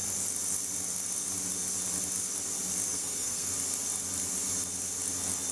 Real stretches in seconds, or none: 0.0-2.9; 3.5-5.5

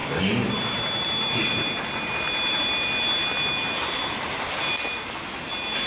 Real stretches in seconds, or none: 0.5-5.9

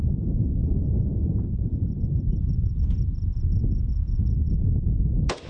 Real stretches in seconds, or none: 0.0-0.6; 1.2-5.5